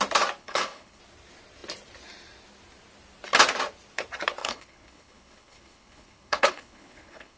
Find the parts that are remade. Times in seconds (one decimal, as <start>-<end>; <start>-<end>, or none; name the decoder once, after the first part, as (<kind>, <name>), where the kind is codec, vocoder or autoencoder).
0.4-1.0 (codec, HILCodec); 4.4-7.4